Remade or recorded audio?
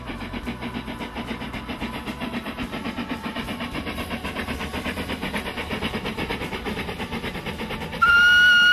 recorded